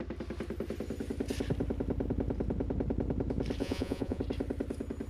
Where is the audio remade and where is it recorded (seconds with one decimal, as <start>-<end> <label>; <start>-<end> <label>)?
0.0-3.6 recorded; 3.6-4.2 remade; 4.2-5.1 recorded